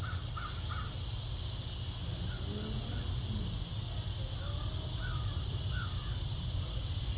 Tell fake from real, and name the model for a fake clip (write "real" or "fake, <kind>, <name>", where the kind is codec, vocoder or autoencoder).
real